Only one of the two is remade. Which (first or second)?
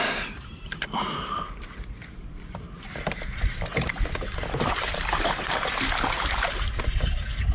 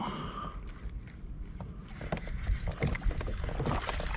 first